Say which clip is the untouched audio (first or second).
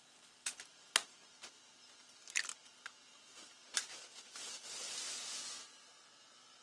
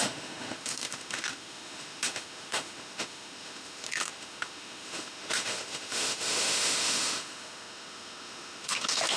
first